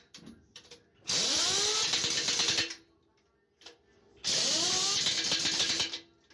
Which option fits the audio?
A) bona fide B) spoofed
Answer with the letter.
A